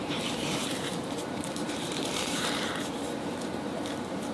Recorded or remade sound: remade